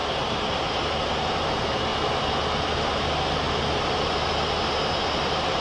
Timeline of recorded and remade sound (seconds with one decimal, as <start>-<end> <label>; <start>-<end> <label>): 0.0-1.9 remade; 1.9-4.6 recorded; 4.6-5.6 remade